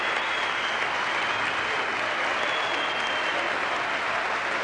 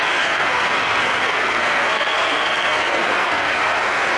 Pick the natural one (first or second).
first